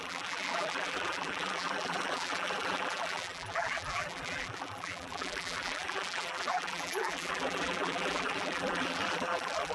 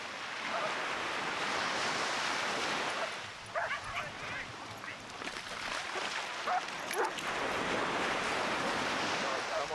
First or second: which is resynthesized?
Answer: first